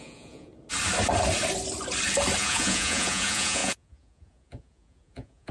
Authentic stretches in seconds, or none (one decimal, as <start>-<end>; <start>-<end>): 0.5-2.4